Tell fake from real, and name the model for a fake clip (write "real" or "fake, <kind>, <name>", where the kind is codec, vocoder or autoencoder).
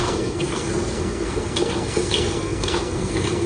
fake, codec, SNAC